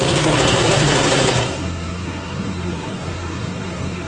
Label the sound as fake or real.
fake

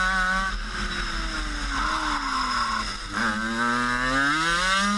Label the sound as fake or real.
real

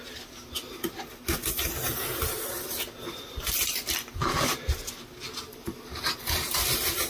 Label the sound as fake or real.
real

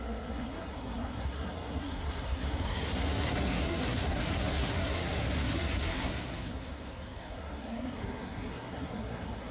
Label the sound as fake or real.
fake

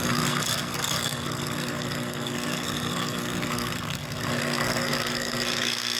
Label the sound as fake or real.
fake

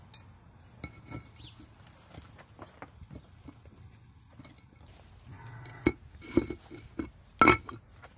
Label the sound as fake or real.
real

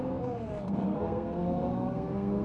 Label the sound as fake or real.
fake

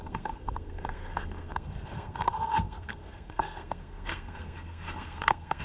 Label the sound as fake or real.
fake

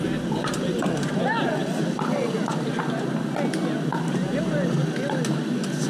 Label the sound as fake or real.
real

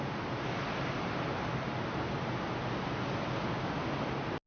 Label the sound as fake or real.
real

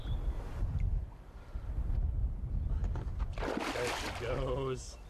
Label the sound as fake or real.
real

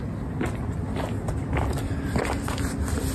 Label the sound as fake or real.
real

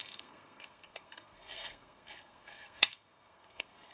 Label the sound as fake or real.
fake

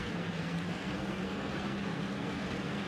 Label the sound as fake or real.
fake